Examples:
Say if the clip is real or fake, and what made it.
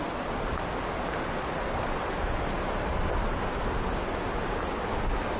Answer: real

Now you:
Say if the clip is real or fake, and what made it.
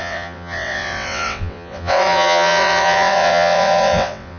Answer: fake, vocoder, WaveNeXt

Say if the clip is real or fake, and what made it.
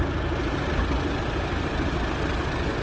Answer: real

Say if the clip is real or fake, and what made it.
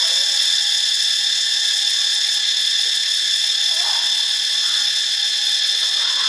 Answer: fake, vocoder, WaveNeXt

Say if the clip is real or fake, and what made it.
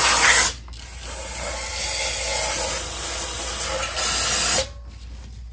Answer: real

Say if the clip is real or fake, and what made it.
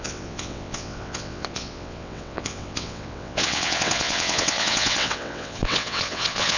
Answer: fake, vocoder, WaveNeXt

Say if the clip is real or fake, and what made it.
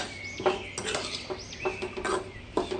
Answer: real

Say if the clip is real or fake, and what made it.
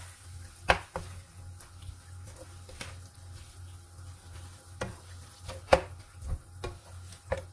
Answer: real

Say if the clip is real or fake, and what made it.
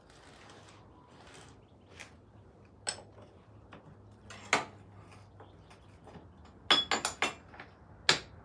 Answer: real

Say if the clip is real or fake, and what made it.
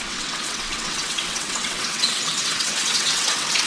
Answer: fake, vocoder, WaveNeXt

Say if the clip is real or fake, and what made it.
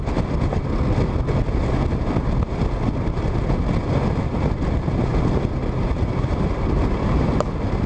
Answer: real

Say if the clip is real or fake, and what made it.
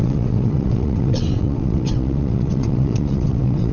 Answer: fake, vocoder, WaveNeXt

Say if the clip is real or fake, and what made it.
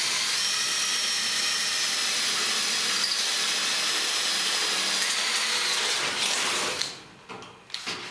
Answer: real